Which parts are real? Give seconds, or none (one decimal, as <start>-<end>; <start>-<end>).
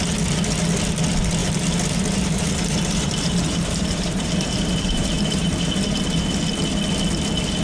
0.0-1.4; 5.7-7.6